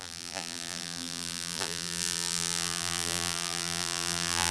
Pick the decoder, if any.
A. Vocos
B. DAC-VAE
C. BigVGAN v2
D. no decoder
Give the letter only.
C